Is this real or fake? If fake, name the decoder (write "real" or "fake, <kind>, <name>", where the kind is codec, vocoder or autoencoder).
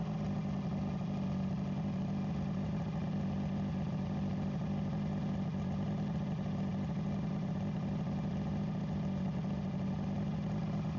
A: real